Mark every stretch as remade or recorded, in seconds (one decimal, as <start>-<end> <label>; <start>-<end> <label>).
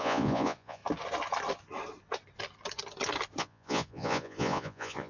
0.0-0.8 remade; 0.8-3.4 recorded; 3.4-5.1 remade